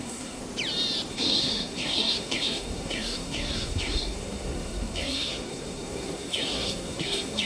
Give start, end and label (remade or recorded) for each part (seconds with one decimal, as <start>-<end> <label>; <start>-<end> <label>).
0.0-0.4 remade; 0.4-1.1 recorded; 1.1-7.5 remade